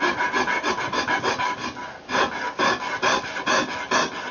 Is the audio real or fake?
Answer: real